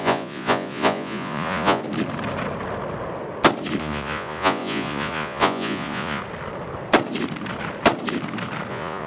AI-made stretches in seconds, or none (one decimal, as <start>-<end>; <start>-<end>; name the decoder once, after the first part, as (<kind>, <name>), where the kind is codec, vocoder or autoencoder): 0.0-1.8 (vocoder, Vocos); 3.8-6.2; 8.7-9.1